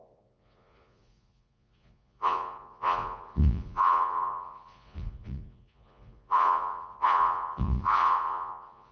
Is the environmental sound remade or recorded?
remade